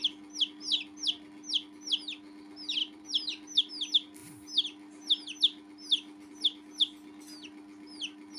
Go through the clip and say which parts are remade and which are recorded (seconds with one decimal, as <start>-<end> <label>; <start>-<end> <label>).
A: 0.0-2.8 recorded; 2.8-3.7 remade; 3.7-8.4 recorded

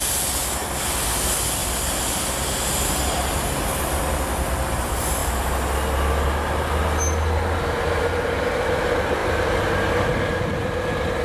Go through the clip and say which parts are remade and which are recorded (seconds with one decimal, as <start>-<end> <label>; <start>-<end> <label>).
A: 0.0-0.6 recorded; 0.6-1.2 remade; 1.2-11.2 recorded